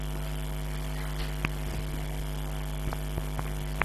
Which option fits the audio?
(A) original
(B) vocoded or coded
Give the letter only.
A